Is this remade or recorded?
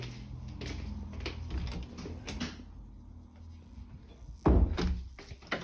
recorded